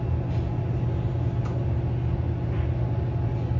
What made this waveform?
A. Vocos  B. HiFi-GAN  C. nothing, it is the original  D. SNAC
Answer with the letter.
C